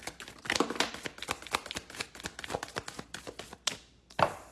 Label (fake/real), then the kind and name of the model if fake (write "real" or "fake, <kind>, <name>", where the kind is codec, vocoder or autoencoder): real